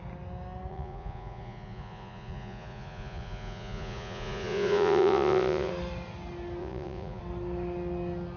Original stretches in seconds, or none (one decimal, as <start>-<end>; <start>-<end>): 0.0-0.7; 5.7-6.6; 7.2-8.4